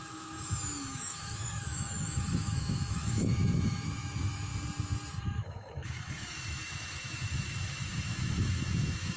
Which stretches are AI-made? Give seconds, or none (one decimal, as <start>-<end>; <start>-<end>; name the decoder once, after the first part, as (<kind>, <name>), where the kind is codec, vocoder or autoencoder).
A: 0.0-4.5 (autoencoder, DAC-VAE); 5.2-9.2